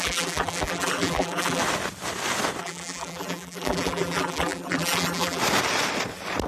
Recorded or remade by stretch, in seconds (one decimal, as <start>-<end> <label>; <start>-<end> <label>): 0.0-1.6 remade; 1.6-2.6 recorded; 2.6-5.4 remade; 5.4-6.5 recorded